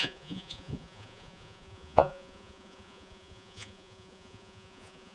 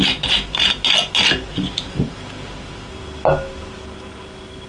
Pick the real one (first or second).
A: second